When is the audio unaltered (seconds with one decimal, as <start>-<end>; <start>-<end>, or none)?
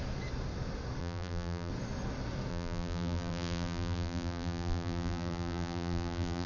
0.0-1.0; 1.7-2.5